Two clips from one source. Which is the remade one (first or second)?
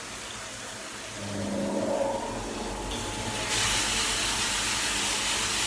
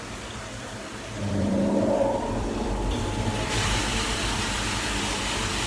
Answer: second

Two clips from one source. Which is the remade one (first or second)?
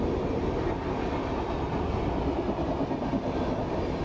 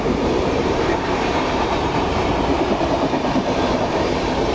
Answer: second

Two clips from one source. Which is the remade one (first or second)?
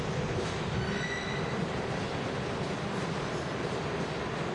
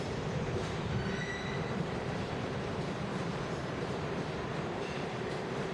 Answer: second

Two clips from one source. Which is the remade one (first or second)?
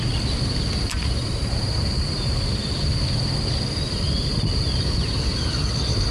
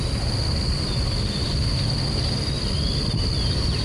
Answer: first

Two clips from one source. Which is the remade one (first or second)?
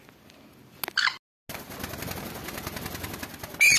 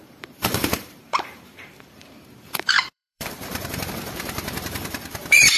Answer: second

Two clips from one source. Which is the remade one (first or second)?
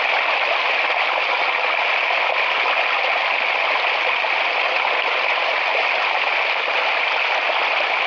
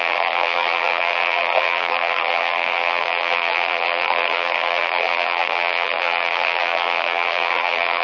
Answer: second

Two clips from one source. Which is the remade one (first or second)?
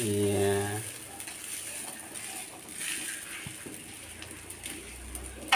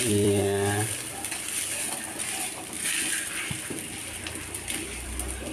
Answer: second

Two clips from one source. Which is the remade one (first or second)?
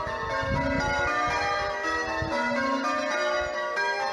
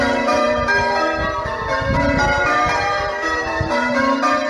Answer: second